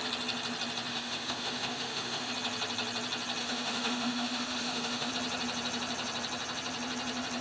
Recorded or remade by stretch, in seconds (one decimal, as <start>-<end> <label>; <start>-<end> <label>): 0.0-0.9 recorded; 0.9-2.3 remade; 2.3-3.4 recorded; 3.4-5.1 remade; 5.1-7.4 recorded